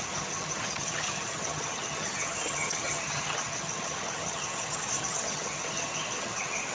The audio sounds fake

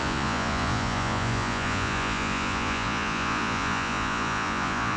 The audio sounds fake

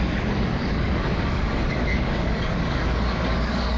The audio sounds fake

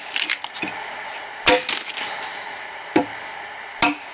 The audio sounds real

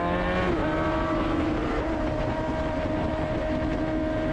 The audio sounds real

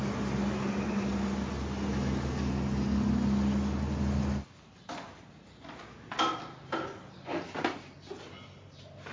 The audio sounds real